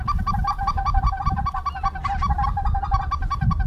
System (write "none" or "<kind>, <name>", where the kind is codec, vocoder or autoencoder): none